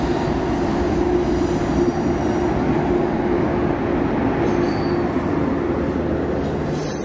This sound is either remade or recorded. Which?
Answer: recorded